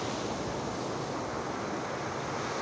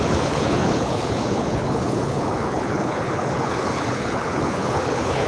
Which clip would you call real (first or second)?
first